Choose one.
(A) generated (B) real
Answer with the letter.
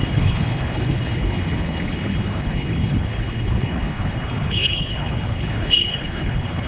A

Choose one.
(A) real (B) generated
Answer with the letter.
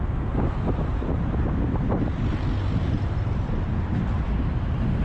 A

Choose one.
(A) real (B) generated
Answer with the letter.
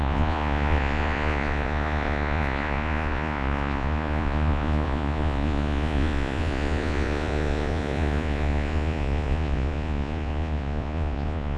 B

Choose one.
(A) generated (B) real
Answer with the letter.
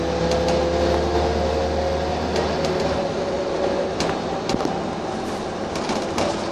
B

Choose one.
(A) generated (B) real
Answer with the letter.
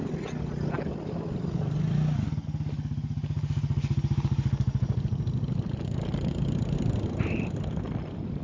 B